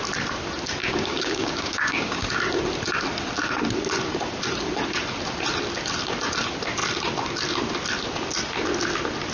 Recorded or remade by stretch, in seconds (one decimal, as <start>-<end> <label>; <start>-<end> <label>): 0.0-0.8 recorded; 0.8-2.4 remade; 2.4-9.3 recorded